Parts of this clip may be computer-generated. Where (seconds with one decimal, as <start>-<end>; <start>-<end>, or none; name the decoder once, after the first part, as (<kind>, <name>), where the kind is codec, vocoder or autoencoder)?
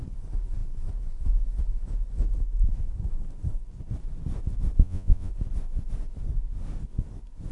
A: 4.8-5.3 (vocoder, Vocos)